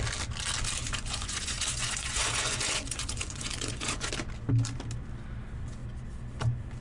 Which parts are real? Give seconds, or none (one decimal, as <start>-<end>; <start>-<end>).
0.0-0.8; 4.1-6.8